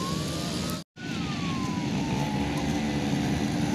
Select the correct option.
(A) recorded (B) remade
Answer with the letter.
A